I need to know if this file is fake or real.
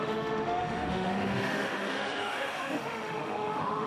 fake